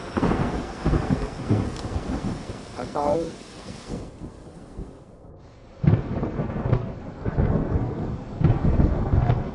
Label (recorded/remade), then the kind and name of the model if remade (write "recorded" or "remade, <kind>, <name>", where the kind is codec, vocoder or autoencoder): remade, codec, SNAC